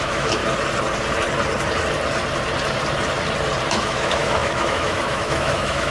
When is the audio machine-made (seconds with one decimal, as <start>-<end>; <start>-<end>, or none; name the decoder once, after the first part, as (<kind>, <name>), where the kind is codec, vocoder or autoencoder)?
0.0-0.4 (autoencoder, DAC-VAE); 3.7-5.9